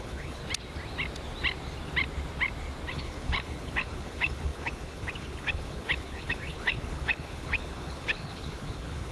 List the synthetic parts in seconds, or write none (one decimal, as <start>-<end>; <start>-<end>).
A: 0.0-0.4; 2.9-9.1